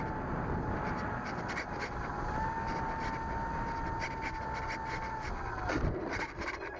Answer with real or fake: real